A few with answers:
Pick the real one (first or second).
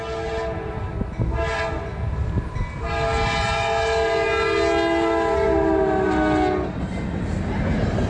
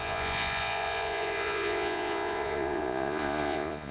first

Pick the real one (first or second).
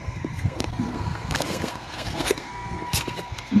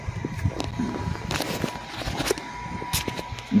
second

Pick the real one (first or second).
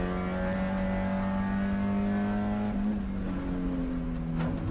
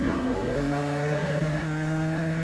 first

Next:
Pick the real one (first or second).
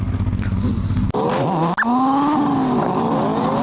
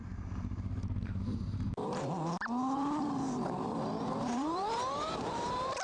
first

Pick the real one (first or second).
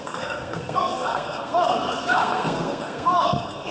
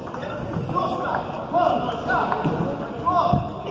second